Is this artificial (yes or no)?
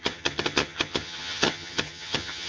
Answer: yes